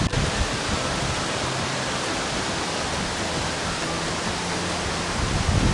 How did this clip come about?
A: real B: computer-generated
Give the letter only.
A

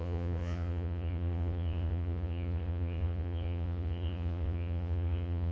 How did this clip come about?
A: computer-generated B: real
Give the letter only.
A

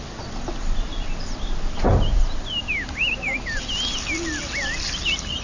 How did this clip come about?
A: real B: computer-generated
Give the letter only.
A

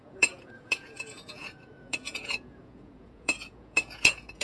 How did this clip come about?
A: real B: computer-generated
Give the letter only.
B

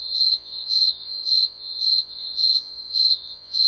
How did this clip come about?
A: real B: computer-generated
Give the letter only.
B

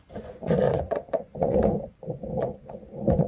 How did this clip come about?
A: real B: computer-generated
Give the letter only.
B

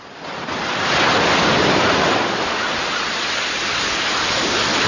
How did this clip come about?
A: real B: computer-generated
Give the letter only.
A